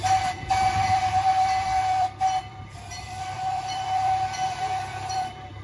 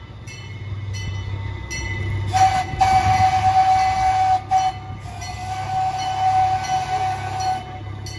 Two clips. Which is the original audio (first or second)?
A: second